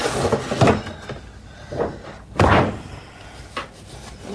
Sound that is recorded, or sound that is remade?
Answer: recorded